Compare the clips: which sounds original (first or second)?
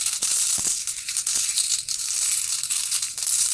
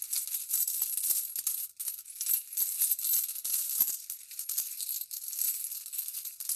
second